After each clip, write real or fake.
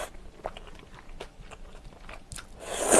real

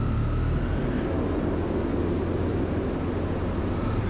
real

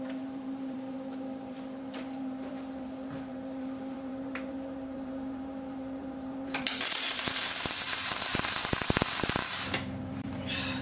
fake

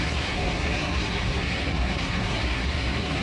fake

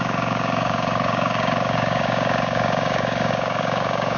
fake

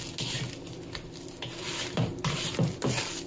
real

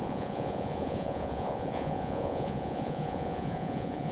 fake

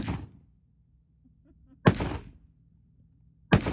real